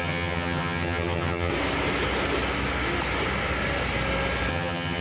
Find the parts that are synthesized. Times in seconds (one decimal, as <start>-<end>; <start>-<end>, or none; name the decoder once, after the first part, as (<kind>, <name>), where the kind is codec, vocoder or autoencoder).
0.0-1.5 (vocoder, HiFi-GAN); 4.5-5.0